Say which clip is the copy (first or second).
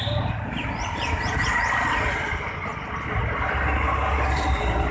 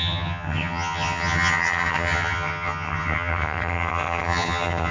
second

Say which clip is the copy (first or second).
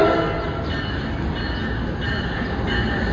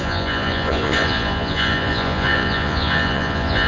second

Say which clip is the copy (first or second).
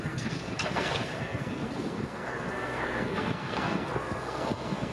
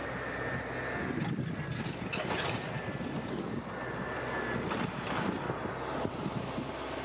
first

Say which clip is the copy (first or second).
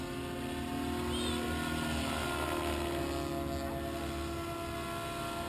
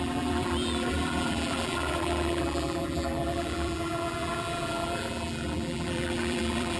second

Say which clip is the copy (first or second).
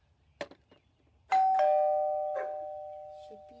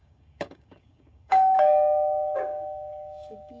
second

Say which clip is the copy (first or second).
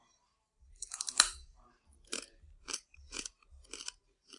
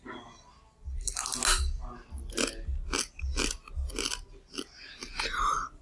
first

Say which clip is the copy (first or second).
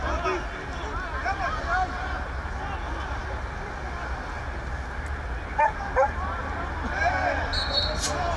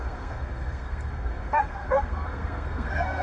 second